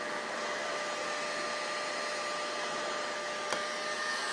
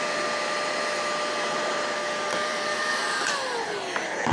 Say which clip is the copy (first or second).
second